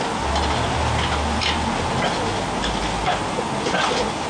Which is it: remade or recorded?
recorded